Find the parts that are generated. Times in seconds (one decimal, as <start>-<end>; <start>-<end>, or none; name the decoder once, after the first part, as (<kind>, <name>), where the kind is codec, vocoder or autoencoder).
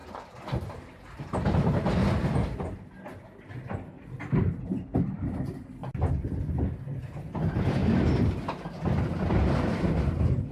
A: 5.8-6.6 (vocoder, BigVGAN v2); 7.8-8.4